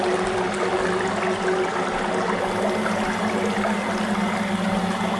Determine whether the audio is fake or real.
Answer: real